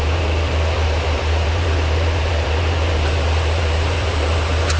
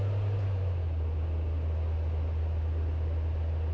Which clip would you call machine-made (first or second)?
first